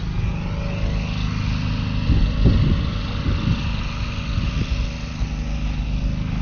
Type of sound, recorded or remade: recorded